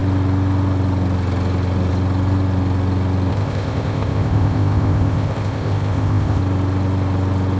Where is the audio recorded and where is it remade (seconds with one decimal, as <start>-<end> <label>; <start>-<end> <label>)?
0.0-3.3 recorded; 3.3-6.4 remade; 6.4-7.6 recorded